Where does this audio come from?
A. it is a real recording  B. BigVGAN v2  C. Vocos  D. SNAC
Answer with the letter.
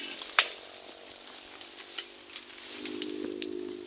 A